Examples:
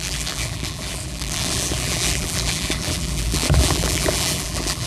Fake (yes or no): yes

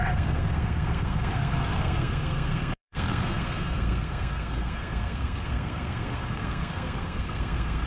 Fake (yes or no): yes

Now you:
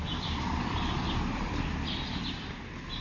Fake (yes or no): yes